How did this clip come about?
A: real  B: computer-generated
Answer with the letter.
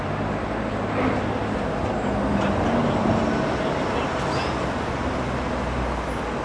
A